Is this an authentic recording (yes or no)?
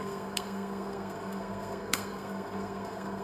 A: no